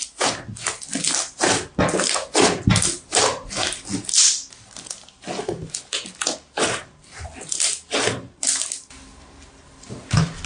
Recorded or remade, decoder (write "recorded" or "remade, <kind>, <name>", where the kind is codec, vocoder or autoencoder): recorded